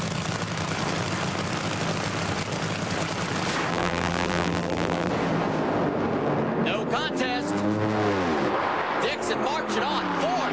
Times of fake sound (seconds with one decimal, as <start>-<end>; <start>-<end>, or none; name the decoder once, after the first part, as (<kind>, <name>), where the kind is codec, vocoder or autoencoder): 3.7-5.1 (vocoder, BigVGAN v2)